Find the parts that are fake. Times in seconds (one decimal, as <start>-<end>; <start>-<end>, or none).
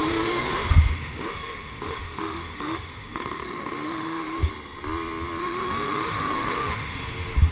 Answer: 0.0-4.5; 5.4-7.0